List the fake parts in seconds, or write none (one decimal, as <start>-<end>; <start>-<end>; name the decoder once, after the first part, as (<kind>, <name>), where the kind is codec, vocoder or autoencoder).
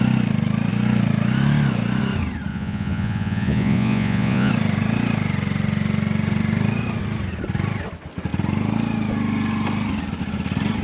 2.5-4.5 (vocoder, Vocos)